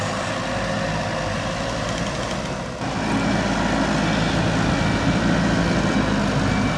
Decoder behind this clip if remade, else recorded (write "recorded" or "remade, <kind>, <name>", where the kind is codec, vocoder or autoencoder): recorded